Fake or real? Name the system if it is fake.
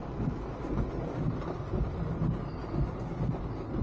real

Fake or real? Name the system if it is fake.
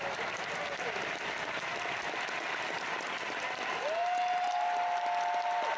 real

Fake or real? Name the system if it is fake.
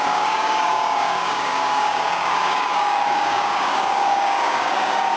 fake, codec, DAC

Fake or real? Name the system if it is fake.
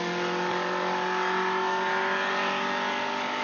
fake, codec, DAC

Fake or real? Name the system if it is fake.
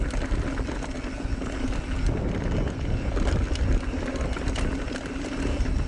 real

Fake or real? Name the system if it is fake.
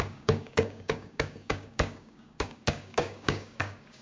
fake, codec, DAC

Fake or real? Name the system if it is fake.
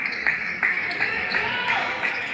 fake, codec, DAC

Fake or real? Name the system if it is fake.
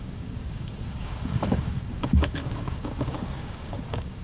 fake, codec, DAC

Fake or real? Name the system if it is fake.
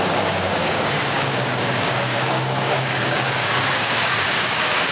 fake, codec, DAC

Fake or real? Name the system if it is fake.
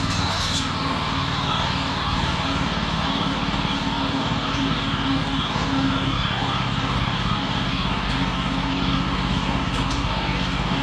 fake, codec, DAC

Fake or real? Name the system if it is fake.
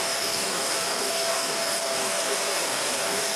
fake, codec, DAC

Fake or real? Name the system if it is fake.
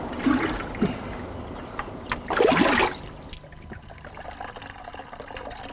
real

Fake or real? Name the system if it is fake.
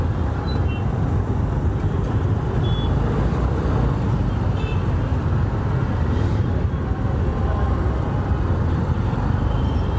real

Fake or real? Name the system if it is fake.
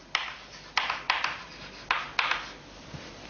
real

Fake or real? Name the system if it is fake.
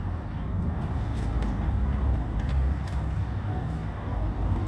fake, codec, DAC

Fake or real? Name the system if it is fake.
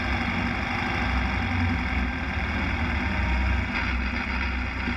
real